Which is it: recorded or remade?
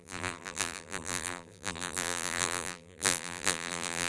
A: remade